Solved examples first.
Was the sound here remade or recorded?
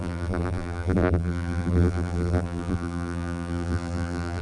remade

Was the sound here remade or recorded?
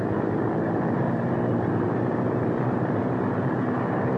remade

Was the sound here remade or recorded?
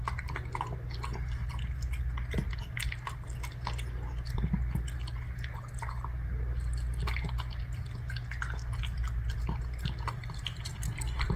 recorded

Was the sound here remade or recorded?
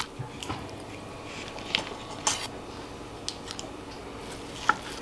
recorded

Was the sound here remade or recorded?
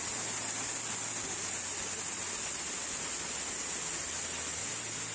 recorded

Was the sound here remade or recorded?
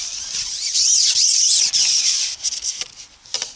recorded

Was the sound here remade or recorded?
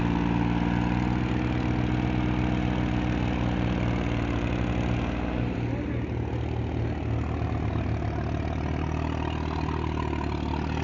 recorded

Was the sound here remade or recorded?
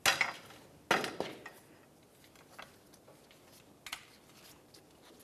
recorded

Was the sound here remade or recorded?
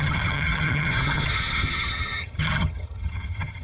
remade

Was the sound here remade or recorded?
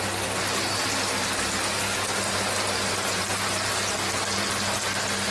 recorded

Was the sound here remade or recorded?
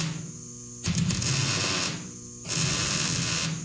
recorded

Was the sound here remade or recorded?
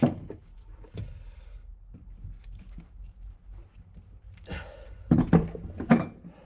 recorded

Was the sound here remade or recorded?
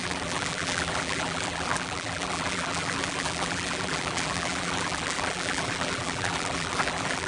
remade